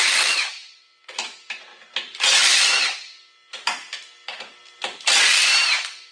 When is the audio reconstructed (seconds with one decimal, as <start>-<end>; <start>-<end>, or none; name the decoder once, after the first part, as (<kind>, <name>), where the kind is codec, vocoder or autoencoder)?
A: none